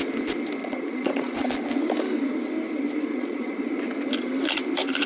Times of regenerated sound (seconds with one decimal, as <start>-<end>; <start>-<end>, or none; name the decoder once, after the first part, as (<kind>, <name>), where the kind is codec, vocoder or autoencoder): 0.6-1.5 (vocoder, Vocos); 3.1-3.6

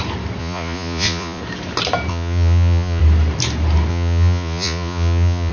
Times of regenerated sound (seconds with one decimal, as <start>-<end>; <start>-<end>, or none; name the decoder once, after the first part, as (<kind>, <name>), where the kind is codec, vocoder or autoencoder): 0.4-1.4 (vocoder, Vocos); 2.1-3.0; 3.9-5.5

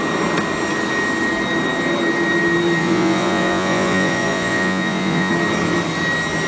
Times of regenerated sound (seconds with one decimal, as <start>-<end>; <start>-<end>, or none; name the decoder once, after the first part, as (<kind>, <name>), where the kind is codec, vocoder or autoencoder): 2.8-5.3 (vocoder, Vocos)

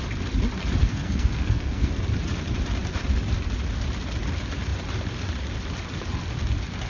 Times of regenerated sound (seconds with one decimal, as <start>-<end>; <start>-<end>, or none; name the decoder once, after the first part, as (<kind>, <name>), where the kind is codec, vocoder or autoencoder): 0.8-1.9 (codec, SNAC)

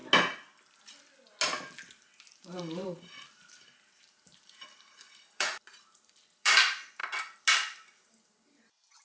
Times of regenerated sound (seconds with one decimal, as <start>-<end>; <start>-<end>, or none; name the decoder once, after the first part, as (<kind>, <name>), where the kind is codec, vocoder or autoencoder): 2.3-7.0 (vocoder, BigVGAN v2)

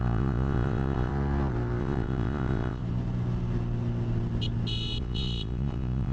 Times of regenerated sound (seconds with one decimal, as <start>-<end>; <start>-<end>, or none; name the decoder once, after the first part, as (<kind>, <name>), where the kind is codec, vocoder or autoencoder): 0.0-1.1 (vocoder, Vocos); 1.8-2.8; 5.0-6.1